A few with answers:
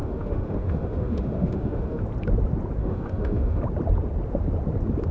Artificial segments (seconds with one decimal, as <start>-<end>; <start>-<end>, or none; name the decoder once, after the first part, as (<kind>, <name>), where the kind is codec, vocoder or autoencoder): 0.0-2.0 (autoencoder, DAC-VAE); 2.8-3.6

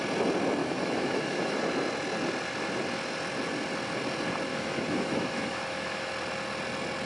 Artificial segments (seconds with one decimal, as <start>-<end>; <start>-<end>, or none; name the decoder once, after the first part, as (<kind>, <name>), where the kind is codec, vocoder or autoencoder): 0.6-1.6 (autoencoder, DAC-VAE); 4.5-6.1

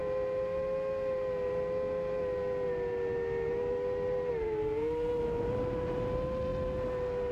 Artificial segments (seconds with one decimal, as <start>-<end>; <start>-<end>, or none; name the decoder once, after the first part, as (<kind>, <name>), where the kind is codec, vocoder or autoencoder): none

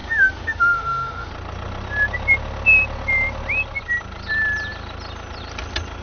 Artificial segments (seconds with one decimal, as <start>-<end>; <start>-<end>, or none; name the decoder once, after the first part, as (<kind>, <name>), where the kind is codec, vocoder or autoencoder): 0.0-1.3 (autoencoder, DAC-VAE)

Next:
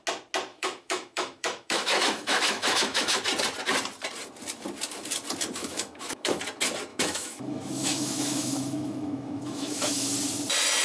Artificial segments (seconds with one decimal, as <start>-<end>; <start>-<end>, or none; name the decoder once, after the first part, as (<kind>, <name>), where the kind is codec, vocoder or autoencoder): 0.5-3.2 (autoencoder, DAC-VAE); 5.6-6.4; 6.9-10.1

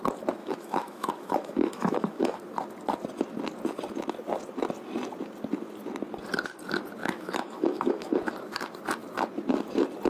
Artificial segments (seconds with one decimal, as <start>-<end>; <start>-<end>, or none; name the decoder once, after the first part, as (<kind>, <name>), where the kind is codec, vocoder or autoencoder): 0.4-2.4 (autoencoder, DAC-VAE); 7.0-8.2